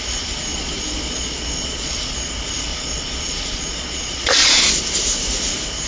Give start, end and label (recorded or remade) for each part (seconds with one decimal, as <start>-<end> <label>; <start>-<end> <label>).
0.0-0.5 recorded; 0.5-2.1 remade; 2.1-2.7 recorded; 2.7-4.6 remade; 4.6-5.9 recorded